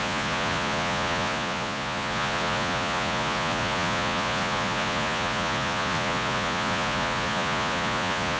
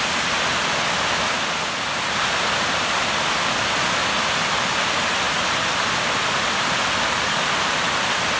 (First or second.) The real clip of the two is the second